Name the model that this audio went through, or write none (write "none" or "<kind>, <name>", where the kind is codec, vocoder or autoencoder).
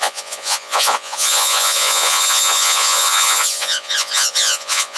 vocoder, Vocos